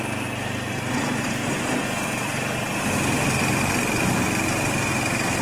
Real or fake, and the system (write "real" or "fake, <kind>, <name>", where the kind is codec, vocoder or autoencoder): real